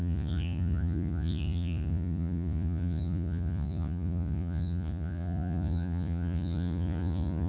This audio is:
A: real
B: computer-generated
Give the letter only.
B